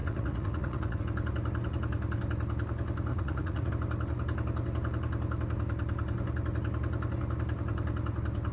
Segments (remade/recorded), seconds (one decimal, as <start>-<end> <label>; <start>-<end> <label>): 0.0-1.0 remade; 1.0-3.1 recorded; 3.1-3.7 remade; 3.7-8.5 recorded

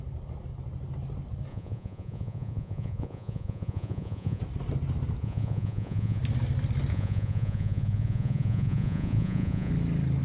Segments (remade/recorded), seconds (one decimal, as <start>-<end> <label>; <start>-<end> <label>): 0.0-1.5 recorded; 1.5-4.4 remade; 4.4-5.2 recorded; 5.2-6.2 remade; 6.2-6.9 recorded; 6.9-9.7 remade; 9.7-10.2 recorded

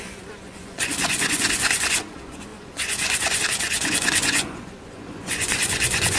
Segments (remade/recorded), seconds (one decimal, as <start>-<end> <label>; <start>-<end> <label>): 0.0-6.2 remade

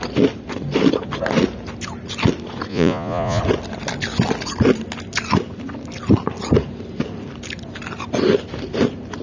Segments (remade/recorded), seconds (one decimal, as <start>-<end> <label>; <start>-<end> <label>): 0.0-2.7 recorded; 2.7-3.4 remade; 3.4-9.2 recorded

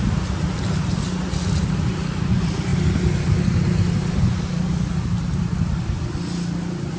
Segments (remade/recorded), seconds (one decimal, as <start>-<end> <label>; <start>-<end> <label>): 0.0-7.0 recorded

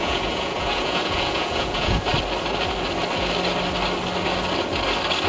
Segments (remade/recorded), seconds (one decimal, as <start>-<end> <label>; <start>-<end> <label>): 0.0-2.1 remade; 2.1-5.3 recorded